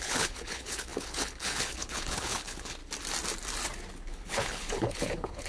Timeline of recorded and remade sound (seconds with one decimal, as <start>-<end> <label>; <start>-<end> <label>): 0.0-2.8 remade; 2.8-4.0 recorded; 4.0-5.5 remade